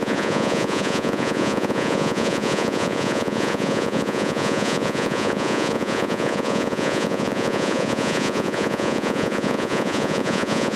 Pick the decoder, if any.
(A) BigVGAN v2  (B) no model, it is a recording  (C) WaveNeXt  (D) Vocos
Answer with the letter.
D